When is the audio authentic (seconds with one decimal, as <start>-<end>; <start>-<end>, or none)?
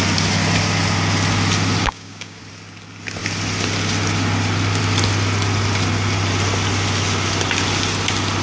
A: 0.0-1.8; 2.4-8.4